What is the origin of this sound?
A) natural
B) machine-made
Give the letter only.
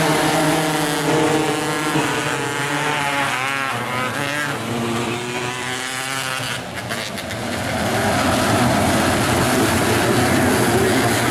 A